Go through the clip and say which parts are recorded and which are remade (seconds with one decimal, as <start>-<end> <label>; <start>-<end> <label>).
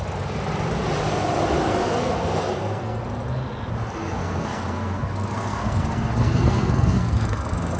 0.0-1.6 recorded; 1.6-3.0 remade; 3.0-4.2 recorded; 4.2-7.8 remade